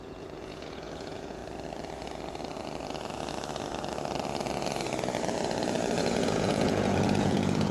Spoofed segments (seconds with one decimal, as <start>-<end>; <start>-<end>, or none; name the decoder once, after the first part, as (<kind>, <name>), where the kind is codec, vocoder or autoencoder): 0.0-1.4 (vocoder, Vocos); 6.0-7.7